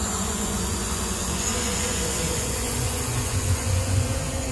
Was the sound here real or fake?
fake